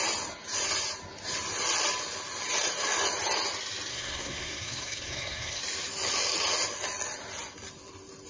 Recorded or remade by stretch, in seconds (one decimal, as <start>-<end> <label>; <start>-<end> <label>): 0.0-3.9 recorded; 3.9-5.6 remade; 5.6-8.3 recorded